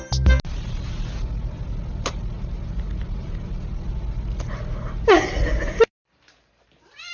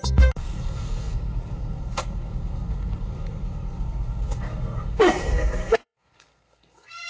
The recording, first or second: first